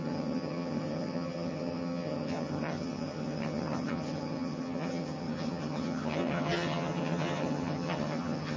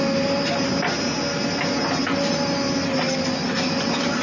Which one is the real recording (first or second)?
second